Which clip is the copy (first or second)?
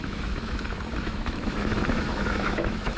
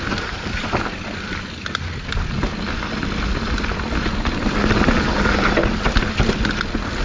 first